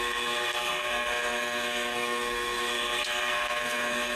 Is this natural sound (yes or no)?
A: no